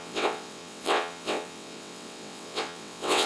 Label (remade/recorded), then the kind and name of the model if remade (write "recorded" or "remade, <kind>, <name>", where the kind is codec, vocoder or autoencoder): remade, vocoder, WaveNeXt